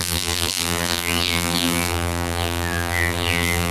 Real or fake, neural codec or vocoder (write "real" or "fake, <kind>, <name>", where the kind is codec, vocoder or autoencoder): fake, vocoder, BigVGAN v2